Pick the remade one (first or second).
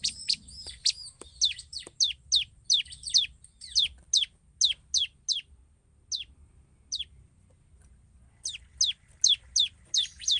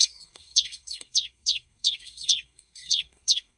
second